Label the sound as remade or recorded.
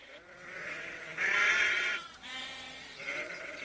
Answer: remade